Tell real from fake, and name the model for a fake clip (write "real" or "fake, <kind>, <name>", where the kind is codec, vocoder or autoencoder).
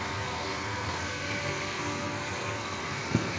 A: fake, codec, SNAC